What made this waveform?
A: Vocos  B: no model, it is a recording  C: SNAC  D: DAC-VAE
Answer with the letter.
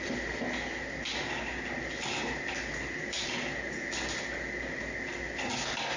B